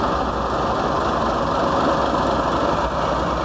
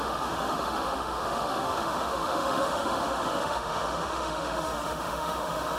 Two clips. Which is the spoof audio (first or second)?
second